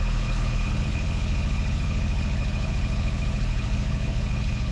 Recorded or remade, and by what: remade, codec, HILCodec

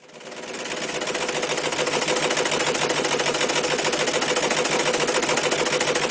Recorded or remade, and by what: recorded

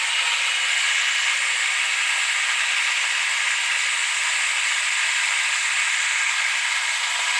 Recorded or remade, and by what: recorded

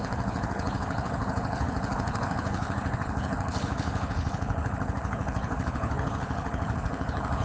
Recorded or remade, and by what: remade, codec, HILCodec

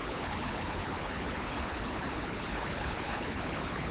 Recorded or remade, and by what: remade, codec, HILCodec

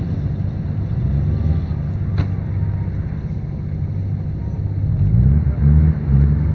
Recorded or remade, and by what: recorded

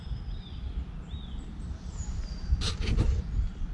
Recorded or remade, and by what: recorded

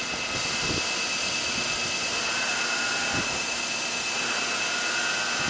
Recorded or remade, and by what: recorded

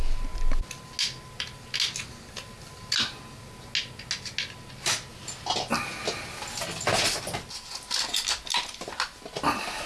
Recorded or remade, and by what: recorded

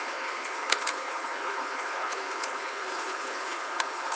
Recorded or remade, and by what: remade, codec, HILCodec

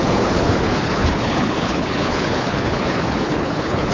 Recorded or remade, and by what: remade, codec, HILCodec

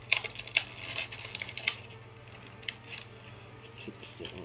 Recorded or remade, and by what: recorded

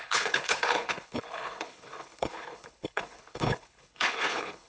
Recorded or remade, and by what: remade, codec, HILCodec